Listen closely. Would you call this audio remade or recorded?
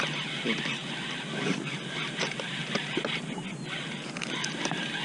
recorded